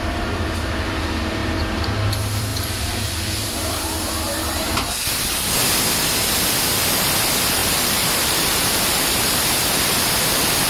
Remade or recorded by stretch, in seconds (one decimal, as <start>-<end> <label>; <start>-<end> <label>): 0.0-2.5 recorded; 2.5-4.1 remade; 4.1-7.6 recorded; 7.6-9.7 remade; 9.7-10.7 recorded